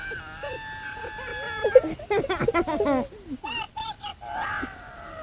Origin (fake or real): real